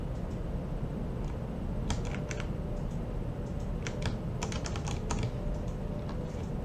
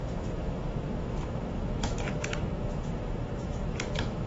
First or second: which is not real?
second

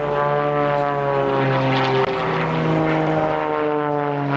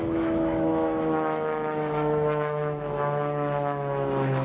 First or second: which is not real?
second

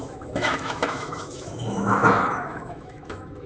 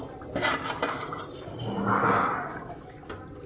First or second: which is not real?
first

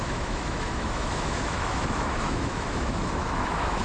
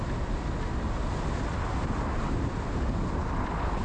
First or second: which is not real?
first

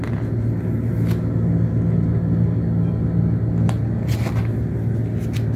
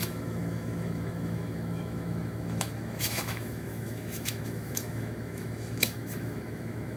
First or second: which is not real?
second